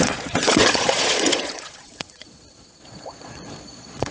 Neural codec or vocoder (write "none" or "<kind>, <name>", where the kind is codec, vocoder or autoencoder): vocoder, Vocos